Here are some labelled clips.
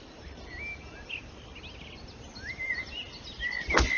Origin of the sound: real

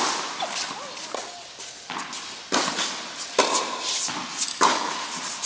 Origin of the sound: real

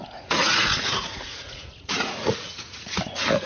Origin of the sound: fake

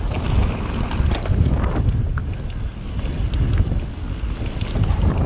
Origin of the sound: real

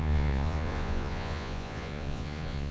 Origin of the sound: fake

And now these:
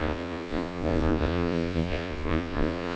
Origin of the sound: fake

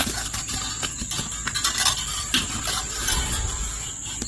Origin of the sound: real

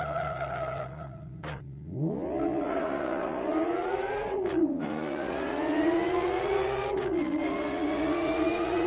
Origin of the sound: fake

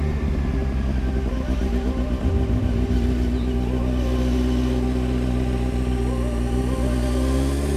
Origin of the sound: real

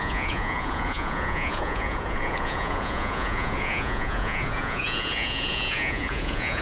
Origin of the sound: fake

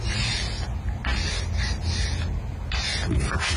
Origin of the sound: real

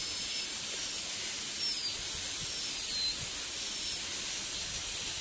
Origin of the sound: real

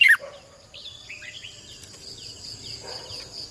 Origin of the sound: real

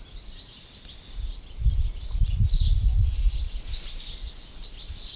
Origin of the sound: real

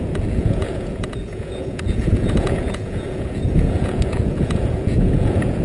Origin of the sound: fake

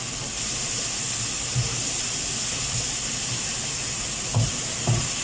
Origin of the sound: real